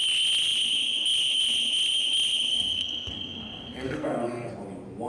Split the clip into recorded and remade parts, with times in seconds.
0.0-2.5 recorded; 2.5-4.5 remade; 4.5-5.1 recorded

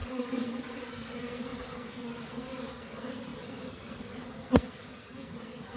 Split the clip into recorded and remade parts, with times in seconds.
0.0-5.8 remade

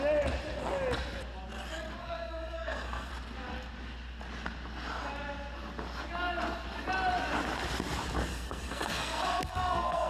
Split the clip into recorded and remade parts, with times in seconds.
0.0-2.0 recorded; 2.0-3.1 remade; 3.1-8.3 recorded; 8.3-10.1 remade

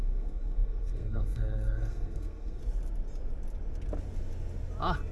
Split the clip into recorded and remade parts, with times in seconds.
0.0-2.6 remade; 2.6-5.1 recorded

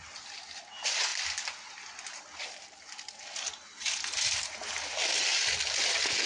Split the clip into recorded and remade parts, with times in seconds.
0.0-6.3 recorded